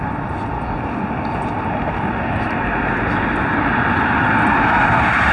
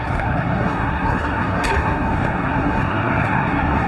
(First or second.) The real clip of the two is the first